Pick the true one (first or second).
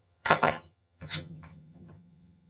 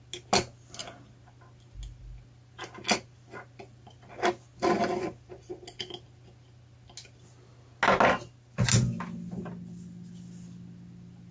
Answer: second